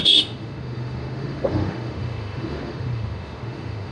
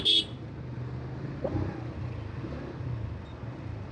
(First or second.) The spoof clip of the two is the first